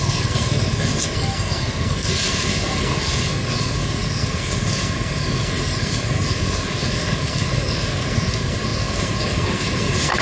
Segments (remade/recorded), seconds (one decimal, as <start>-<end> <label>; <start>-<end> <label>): 0.0-10.2 remade